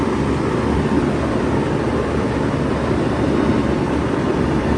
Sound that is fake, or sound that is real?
real